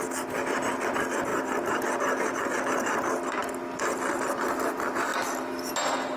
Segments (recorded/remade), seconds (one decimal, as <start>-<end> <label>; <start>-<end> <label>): 0.0-6.2 recorded